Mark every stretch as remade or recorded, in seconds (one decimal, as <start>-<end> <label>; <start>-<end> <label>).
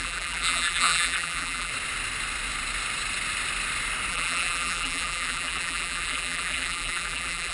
0.0-1.7 remade; 1.7-4.1 recorded; 4.1-7.5 remade